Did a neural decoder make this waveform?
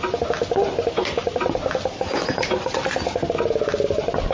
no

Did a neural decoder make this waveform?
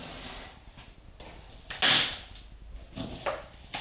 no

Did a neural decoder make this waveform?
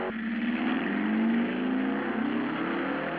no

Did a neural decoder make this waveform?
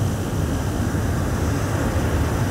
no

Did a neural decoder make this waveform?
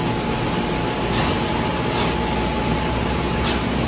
no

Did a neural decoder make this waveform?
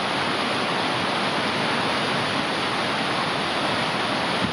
no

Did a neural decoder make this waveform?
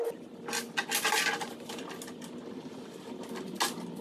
no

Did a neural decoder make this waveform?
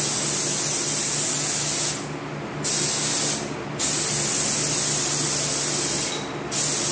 no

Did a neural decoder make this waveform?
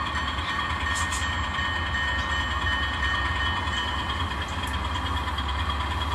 no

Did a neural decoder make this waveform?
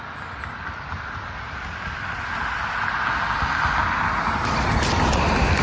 no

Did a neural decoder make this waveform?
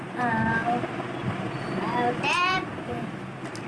no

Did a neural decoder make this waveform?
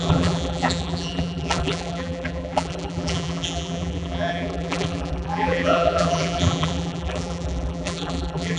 yes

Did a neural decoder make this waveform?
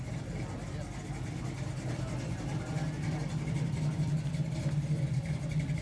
no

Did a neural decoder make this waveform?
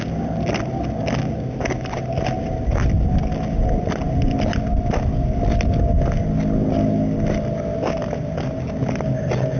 no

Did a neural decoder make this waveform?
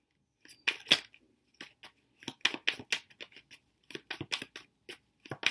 no